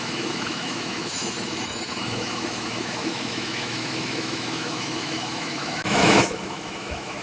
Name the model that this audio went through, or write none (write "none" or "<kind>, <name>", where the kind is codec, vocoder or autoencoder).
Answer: autoencoder, DAC-VAE